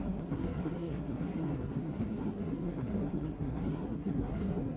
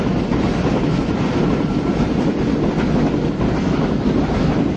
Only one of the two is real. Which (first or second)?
second